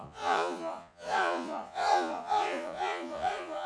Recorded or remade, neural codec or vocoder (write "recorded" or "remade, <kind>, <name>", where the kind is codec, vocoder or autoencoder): remade, vocoder, Vocos